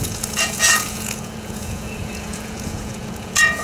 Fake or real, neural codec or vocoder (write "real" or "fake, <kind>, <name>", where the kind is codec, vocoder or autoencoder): fake, vocoder, Vocos